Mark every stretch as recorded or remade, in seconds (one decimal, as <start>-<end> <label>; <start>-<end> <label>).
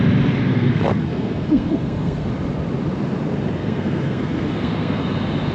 0.0-0.5 recorded; 0.5-2.3 remade; 2.3-3.6 recorded; 3.6-5.0 remade; 5.0-5.5 recorded